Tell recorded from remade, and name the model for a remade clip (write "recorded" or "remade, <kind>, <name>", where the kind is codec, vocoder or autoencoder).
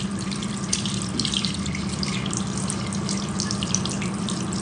recorded